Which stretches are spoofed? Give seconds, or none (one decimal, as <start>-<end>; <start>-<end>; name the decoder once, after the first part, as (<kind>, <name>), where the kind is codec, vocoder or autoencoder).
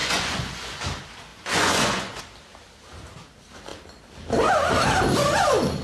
0.0-0.8 (vocoder, Vocos); 1.3-2.2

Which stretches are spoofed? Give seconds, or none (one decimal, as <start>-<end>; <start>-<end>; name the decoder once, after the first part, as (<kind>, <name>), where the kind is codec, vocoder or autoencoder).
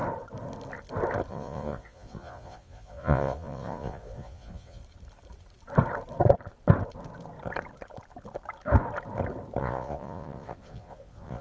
1.3-4.8 (vocoder, Vocos); 9.6-11.4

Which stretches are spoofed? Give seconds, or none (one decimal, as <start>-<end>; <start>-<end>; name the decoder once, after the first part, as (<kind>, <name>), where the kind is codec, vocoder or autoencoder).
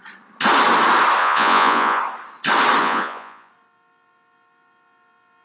1.2-2.0 (vocoder, Vocos); 2.8-3.5